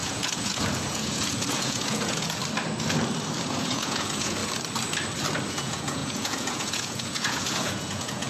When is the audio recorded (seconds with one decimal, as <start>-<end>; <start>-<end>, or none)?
2.4-3.4; 4.4-5.5